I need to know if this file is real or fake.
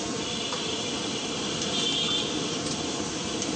real